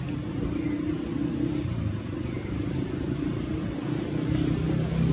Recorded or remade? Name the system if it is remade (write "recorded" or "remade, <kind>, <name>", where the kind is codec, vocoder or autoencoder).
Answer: recorded